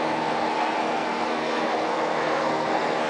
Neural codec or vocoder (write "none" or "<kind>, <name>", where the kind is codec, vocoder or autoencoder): codec, SNAC